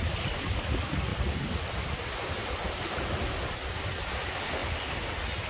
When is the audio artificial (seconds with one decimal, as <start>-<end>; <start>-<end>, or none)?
none